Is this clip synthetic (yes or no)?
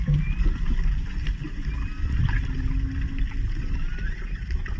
no